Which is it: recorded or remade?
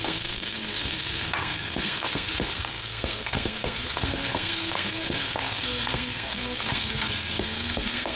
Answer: remade